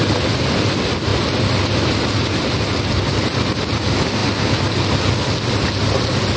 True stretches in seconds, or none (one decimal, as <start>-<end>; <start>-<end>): 0.0-6.4